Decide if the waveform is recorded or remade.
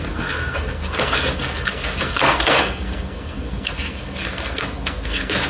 remade